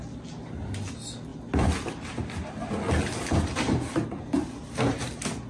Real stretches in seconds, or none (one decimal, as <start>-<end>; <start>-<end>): 0.0-5.5